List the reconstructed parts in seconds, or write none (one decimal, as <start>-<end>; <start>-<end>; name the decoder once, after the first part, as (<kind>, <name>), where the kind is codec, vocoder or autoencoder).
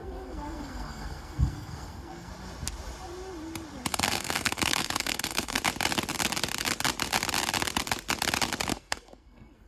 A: 0.0-2.3 (codec, SNAC); 3.9-5.6; 8.7-9.7